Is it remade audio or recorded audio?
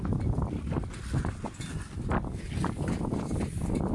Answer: recorded